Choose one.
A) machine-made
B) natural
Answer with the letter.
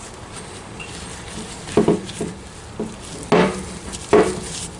B